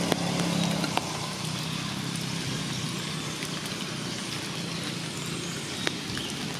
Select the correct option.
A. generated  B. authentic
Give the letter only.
B